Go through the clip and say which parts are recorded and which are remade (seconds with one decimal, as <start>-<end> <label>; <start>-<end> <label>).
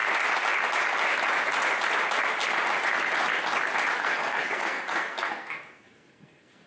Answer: 0.0-4.0 recorded; 4.0-6.7 remade